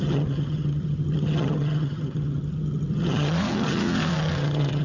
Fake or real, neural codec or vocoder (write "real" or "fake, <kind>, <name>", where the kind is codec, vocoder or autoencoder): fake, vocoder, HiFi-GAN